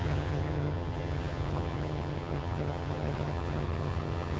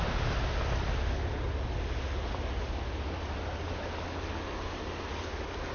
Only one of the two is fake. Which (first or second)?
first